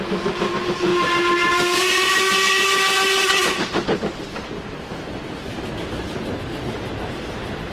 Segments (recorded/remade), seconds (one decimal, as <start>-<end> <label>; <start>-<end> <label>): 0.0-7.7 recorded